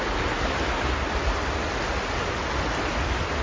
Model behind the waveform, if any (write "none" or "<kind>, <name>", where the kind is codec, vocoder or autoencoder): none